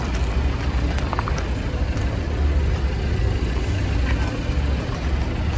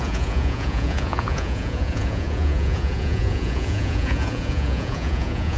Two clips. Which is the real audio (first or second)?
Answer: first